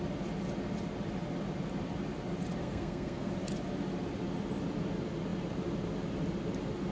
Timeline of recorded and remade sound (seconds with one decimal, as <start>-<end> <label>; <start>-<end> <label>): 0.0-2.6 recorded; 2.6-3.3 remade; 3.3-6.9 recorded